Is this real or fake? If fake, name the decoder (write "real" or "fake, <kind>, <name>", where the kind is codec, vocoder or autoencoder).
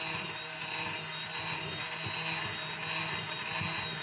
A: real